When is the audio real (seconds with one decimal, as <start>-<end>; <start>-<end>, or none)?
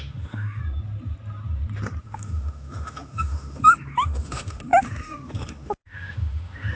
0.6-2.0